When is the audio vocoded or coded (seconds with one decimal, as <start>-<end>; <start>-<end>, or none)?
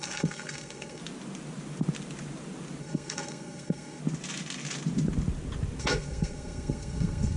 0.0-1.0; 2.8-4.0; 5.8-7.4